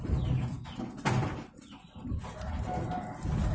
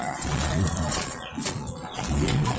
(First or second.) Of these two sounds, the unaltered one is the first